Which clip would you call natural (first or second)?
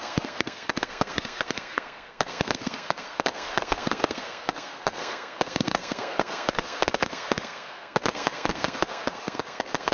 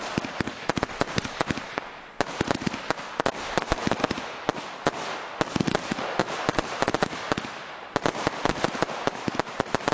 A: second